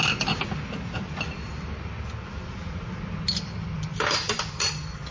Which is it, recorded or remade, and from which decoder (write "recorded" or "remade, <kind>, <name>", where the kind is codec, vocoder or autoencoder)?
recorded